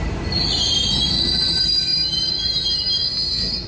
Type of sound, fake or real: real